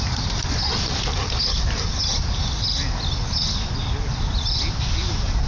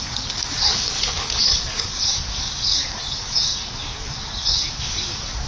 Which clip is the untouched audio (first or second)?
first